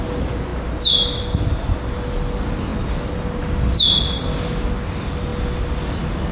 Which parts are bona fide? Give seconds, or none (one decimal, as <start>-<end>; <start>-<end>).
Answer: 0.0-6.3

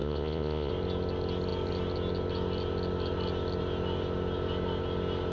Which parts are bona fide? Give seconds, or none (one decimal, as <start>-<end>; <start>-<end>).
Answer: 0.7-5.3

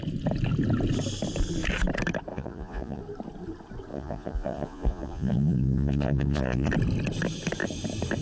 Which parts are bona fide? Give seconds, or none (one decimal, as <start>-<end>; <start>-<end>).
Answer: 0.0-2.3; 3.0-3.9; 6.7-8.2

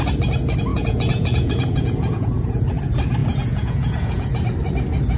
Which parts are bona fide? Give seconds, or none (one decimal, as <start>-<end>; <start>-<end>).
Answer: 0.0-0.7; 2.7-3.2; 4.3-5.2

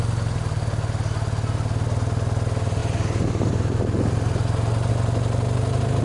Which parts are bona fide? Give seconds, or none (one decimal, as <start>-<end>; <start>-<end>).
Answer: 0.0-6.0

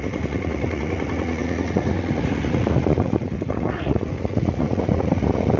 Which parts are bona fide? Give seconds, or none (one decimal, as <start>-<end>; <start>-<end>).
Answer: none

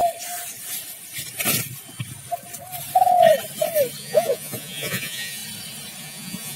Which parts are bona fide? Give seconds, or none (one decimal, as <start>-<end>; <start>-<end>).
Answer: 0.0-4.0; 5.4-6.0

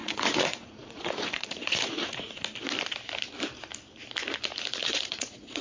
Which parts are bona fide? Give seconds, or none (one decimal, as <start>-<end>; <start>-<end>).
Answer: 2.4-4.8